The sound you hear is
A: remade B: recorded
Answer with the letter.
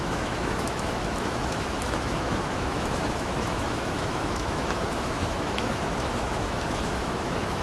A